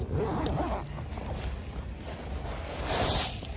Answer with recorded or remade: recorded